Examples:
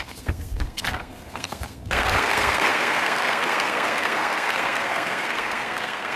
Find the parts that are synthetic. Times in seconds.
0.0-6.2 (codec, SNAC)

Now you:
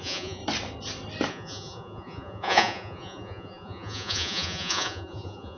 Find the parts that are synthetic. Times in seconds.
0.0-0.4 (vocoder, Vocos); 1.3-5.6

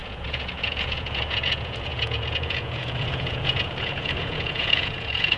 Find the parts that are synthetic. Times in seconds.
0.0-5.4 (vocoder, Vocos)

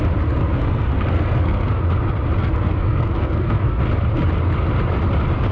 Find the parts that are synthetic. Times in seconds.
0.4-1.8 (codec, SNAC); 2.4-3.9

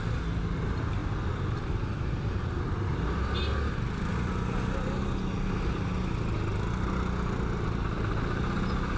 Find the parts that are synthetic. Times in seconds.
none

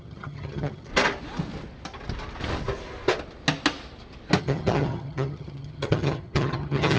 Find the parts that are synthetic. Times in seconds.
0.0-0.9 (vocoder, HiFi-GAN); 4.4-7.0